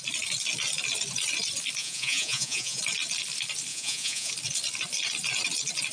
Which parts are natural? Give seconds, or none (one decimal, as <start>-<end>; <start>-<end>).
0.0-1.8; 2.8-3.7; 4.3-5.9